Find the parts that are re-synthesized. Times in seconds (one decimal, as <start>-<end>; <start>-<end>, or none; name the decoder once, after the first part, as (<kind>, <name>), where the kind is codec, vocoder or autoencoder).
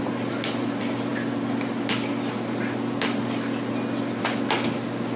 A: none